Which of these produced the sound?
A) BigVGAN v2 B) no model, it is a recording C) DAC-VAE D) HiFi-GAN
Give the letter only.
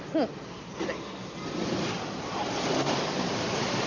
B